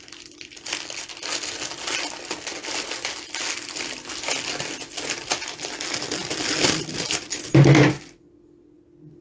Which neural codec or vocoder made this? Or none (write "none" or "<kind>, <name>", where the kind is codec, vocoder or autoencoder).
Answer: none